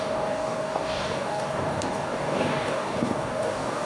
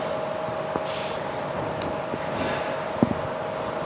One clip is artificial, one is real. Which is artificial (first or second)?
first